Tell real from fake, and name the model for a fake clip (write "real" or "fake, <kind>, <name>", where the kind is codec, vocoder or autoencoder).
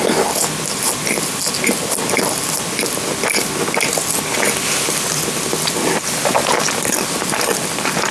real